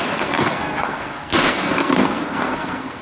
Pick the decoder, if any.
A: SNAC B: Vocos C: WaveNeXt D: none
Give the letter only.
A